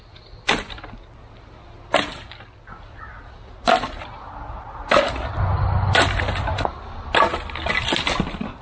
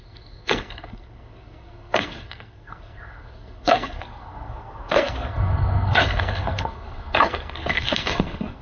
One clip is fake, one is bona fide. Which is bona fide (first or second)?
first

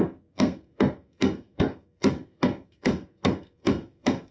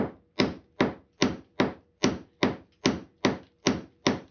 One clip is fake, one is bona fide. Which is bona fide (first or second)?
second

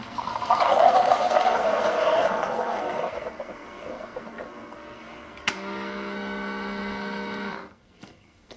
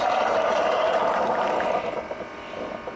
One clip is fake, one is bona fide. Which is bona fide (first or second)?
second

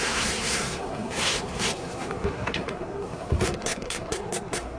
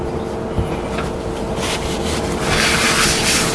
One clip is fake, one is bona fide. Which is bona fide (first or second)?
second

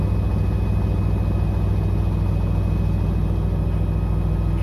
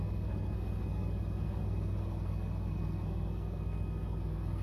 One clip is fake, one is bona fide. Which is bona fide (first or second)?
first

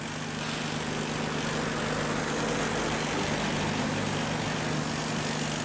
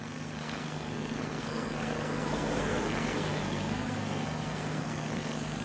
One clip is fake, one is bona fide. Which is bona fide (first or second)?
first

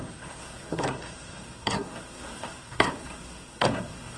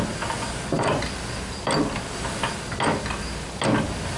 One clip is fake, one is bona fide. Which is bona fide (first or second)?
second